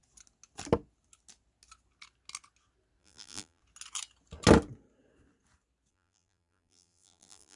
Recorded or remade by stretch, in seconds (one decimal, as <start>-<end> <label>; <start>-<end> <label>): 0.0-3.0 recorded; 3.0-3.6 remade; 3.6-5.9 recorded; 5.9-7.6 remade